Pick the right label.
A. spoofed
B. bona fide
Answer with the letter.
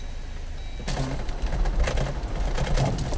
B